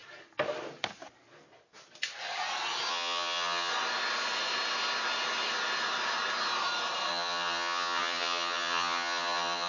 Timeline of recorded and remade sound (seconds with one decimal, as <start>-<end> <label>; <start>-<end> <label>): 0.0-2.9 recorded; 2.9-3.7 remade; 3.7-7.1 recorded; 7.1-9.7 remade

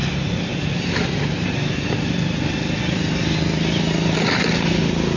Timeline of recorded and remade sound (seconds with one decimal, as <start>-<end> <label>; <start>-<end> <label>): 0.0-5.2 recorded

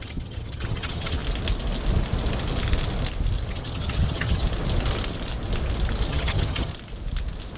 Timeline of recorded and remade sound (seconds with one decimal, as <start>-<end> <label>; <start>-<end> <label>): 0.0-1.2 remade; 1.2-3.5 recorded; 3.5-4.4 remade; 4.4-6.1 recorded; 6.1-6.7 remade; 6.7-7.6 recorded

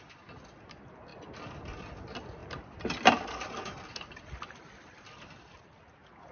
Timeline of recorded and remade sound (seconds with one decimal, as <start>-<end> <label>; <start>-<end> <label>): 0.0-6.3 recorded

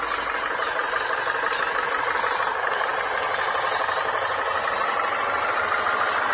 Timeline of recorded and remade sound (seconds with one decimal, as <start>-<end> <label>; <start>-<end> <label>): 0.0-6.3 recorded

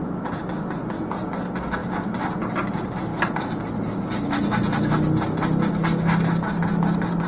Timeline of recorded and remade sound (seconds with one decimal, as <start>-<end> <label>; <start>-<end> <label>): 0.0-7.3 recorded

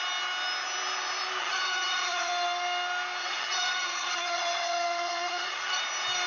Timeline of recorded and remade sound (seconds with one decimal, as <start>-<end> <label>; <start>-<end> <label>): 0.0-1.4 recorded; 1.4-2.3 remade; 2.3-3.2 recorded; 3.2-5.8 remade; 5.8-6.3 recorded

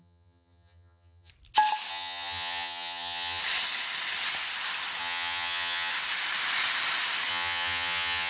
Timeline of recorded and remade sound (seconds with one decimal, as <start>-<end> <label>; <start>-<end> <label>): 0.0-1.3 remade; 1.3-1.9 recorded; 1.9-3.4 remade; 3.4-5.0 recorded; 5.0-5.9 remade; 5.9-7.3 recorded; 7.3-8.3 remade